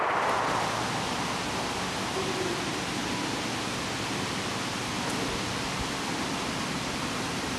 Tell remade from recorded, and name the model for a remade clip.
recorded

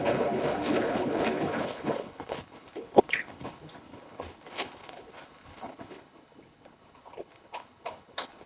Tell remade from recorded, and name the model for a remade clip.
remade, codec, HILCodec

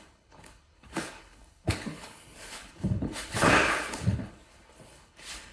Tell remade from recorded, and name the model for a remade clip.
remade, codec, HILCodec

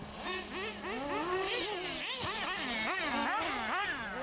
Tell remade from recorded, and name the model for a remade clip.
recorded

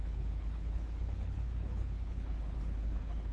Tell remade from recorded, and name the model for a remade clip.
remade, codec, HILCodec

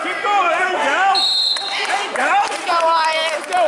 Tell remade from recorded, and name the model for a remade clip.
recorded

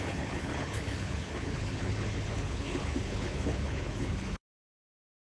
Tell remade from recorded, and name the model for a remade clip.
remade, codec, HILCodec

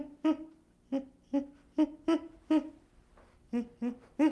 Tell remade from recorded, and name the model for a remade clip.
recorded